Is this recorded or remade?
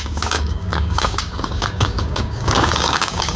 remade